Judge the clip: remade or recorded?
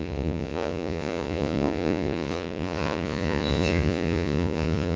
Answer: remade